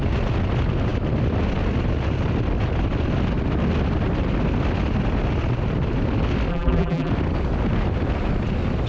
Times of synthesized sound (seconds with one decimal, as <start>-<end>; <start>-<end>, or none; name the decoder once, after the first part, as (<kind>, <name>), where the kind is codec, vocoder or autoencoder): 6.5-7.1 (vocoder, BigVGAN v2)